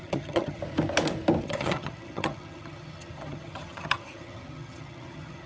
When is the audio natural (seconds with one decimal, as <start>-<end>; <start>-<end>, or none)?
0.6-1.4

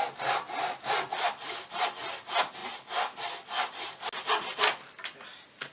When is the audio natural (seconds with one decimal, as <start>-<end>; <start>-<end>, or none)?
0.0-5.7